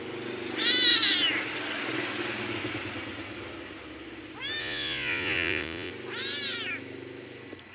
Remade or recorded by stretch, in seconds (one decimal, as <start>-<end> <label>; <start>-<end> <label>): 0.0-4.6 recorded; 4.6-5.9 remade; 5.9-7.7 recorded